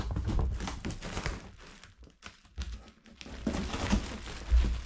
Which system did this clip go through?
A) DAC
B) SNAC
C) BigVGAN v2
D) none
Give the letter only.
D